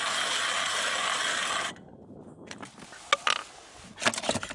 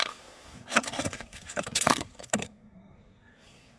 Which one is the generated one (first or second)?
second